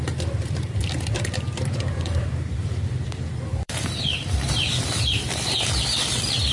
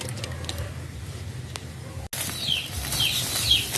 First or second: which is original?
second